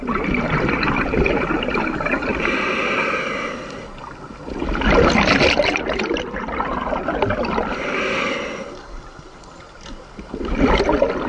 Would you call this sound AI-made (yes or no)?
no